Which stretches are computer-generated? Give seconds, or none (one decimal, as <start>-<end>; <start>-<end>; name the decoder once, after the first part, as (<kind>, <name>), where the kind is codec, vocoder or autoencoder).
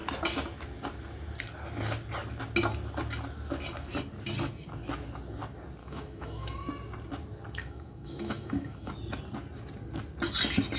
5.8-6.7 (autoencoder, DAC-VAE); 7.6-8.9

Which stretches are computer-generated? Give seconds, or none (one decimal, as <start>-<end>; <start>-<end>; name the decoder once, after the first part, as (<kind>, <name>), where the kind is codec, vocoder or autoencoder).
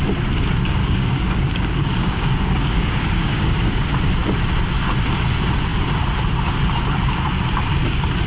0.8-3.7 (codec, DAC)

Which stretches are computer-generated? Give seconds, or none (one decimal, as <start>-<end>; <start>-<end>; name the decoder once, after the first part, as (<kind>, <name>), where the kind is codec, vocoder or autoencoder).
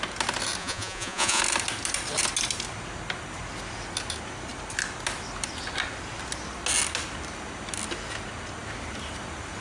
0.6-1.4 (vocoder, Vocos)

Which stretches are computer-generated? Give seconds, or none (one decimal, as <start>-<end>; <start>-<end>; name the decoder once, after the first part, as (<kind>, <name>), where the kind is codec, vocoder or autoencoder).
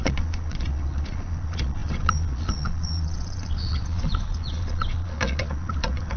0.0-6.2 (vocoder, Vocos)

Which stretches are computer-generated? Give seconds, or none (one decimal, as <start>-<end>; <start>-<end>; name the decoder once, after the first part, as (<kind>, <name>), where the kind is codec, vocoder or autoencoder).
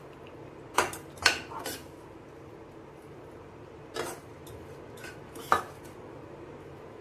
0.0-7.0 (vocoder, BigVGAN v2)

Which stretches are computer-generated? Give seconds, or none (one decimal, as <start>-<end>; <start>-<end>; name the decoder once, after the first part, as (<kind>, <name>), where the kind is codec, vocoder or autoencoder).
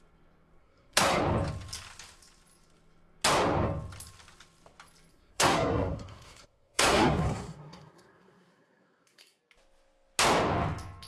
0.6-1.2 (codec, SNAC); 5.1-9.4